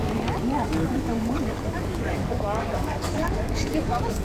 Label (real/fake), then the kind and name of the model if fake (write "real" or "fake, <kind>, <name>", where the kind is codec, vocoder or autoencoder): fake, codec, DAC